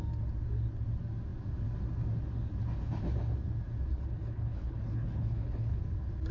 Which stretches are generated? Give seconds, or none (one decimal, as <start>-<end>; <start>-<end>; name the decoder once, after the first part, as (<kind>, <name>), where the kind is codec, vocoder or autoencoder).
3.9-5.8 (codec, HILCodec)